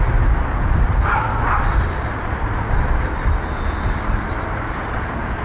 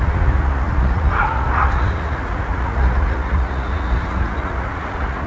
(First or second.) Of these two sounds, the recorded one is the first